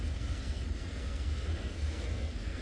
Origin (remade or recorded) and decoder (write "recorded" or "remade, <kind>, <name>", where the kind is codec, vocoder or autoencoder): remade, codec, SNAC